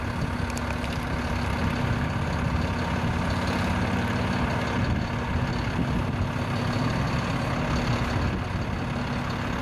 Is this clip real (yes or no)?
yes